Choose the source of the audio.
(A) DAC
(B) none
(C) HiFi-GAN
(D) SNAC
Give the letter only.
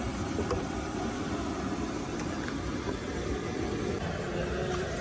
B